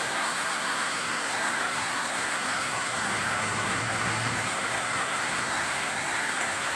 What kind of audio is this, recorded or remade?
remade